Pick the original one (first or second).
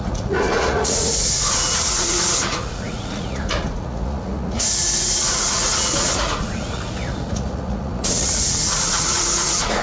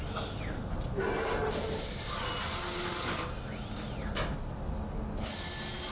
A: second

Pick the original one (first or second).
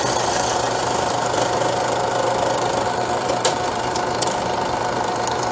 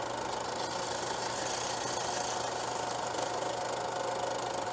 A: second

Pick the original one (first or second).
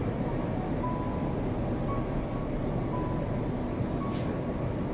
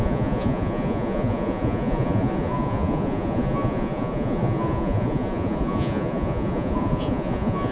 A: first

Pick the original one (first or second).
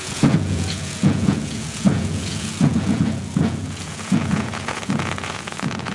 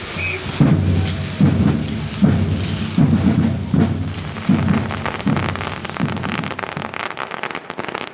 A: second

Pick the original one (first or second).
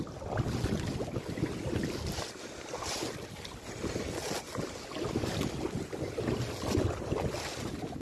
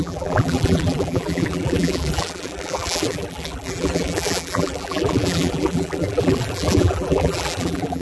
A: first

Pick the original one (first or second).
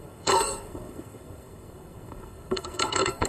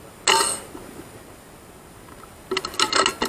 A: second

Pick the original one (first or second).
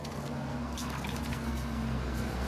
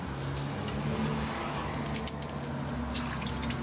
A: second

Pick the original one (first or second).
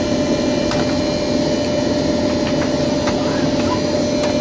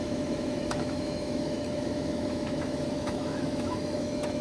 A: first